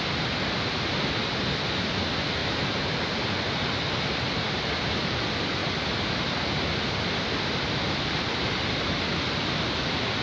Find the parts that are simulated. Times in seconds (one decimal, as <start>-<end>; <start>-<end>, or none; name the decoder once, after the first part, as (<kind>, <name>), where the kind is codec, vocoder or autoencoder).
2.4-4.7 (vocoder, BigVGAN v2)